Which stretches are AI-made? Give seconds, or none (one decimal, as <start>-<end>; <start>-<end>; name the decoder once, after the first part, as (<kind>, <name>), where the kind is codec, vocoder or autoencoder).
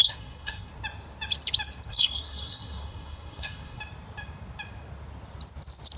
0.0-0.7 (codec, SNAC); 1.9-3.8